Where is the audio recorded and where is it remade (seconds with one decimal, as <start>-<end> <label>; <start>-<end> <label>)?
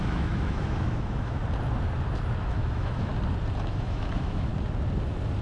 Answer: 0.0-1.4 remade; 1.4-2.4 recorded; 2.4-3.1 remade; 3.1-3.6 recorded; 3.6-4.5 remade; 4.5-5.4 recorded